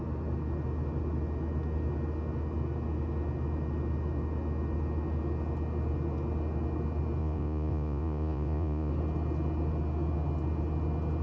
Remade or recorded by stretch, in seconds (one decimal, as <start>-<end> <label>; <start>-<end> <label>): 0.0-7.2 recorded; 7.2-8.9 remade; 8.9-11.2 recorded